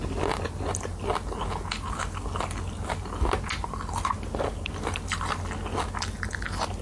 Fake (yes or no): no